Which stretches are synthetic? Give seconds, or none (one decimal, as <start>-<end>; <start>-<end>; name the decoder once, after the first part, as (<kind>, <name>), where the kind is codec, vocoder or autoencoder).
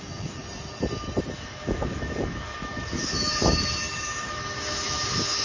0.0-0.4 (autoencoder, DAC-VAE); 1.3-5.4